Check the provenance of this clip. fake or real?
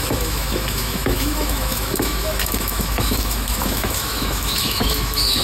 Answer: fake